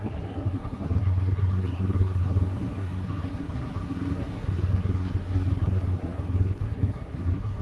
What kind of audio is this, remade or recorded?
remade